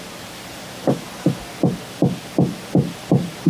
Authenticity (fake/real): real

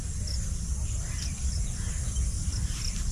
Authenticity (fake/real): real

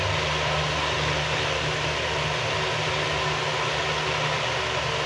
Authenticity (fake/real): real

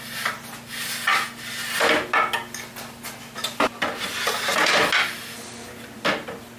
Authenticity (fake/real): real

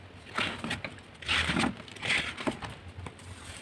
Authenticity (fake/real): real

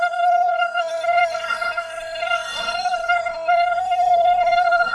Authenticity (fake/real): fake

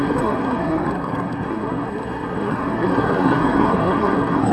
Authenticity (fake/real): fake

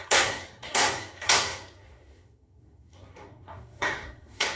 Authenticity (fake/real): fake